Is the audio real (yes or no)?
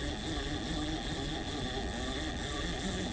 yes